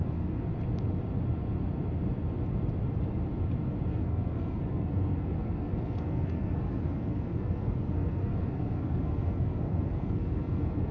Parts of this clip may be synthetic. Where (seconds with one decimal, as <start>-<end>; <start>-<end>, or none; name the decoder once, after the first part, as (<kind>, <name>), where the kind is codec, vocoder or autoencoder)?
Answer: 0.0-0.5 (codec, SNAC); 3.9-10.9